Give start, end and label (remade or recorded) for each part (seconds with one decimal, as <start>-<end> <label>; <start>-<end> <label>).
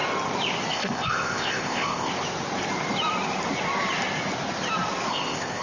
0.0-0.7 recorded; 0.7-2.1 remade; 2.1-5.1 recorded; 5.1-5.6 remade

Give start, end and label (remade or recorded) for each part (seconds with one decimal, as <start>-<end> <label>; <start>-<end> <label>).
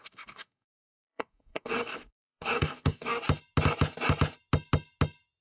0.0-3.2 remade; 3.2-5.4 recorded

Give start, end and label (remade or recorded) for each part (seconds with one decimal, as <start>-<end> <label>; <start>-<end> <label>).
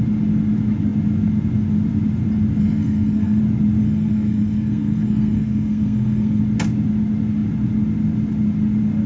0.0-2.6 recorded; 2.6-3.4 remade; 3.4-3.8 recorded; 3.8-6.4 remade; 6.4-9.1 recorded